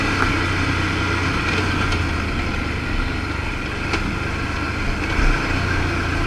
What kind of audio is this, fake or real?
real